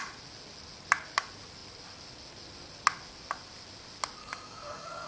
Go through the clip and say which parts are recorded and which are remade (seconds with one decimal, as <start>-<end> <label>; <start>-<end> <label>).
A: 0.0-4.2 recorded; 4.2-5.1 remade